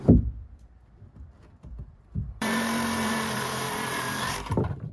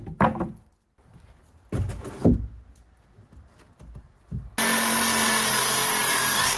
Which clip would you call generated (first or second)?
first